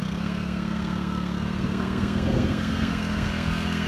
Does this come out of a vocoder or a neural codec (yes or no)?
yes